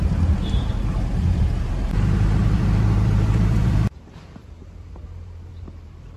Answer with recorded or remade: remade